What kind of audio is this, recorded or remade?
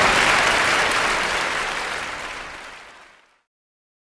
recorded